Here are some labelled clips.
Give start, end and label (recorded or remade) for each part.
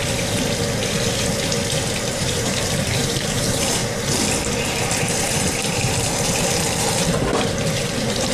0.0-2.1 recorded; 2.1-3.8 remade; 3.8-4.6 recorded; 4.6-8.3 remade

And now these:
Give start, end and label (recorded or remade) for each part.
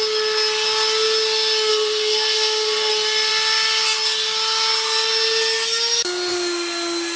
0.0-1.7 recorded; 1.7-2.9 remade; 2.9-7.2 recorded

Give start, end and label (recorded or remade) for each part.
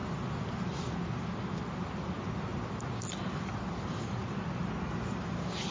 0.0-5.7 recorded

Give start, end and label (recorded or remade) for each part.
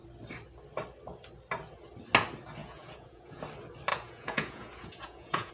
0.0-2.6 recorded; 2.6-3.4 remade; 3.4-3.9 recorded; 3.9-5.5 remade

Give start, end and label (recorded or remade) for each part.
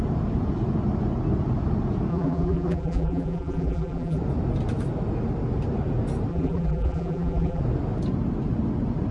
0.0-2.1 recorded; 2.1-4.2 remade; 4.2-6.3 recorded; 6.3-7.6 remade; 7.6-9.1 recorded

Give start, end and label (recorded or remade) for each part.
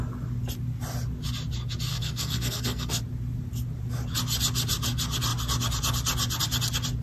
0.0-1.9 recorded; 1.9-3.0 remade; 3.0-7.0 recorded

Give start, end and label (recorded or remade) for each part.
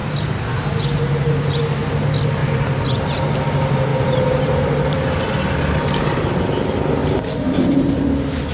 0.0-1.6 remade; 1.6-3.9 recorded; 3.9-6.4 remade; 6.4-7.0 recorded; 7.0-8.5 remade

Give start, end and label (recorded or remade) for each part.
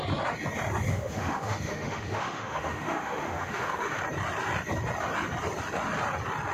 0.0-0.9 recorded; 0.9-4.0 remade; 4.0-6.5 recorded